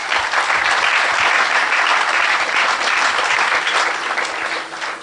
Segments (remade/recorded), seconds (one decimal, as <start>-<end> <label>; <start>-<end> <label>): 0.0-0.7 remade; 0.7-1.9 recorded; 1.9-3.9 remade; 3.9-5.0 recorded